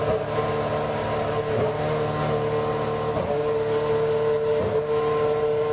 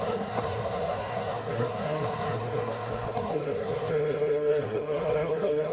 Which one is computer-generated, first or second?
second